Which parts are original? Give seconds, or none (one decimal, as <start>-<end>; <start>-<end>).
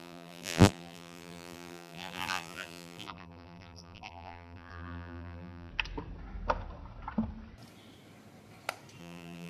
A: 5.7-9.0